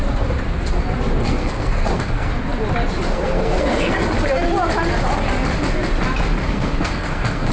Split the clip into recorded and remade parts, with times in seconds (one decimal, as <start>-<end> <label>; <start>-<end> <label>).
0.0-1.2 recorded; 1.2-2.3 remade; 2.3-3.1 recorded; 3.1-4.0 remade; 4.0-6.4 recorded; 6.4-7.5 remade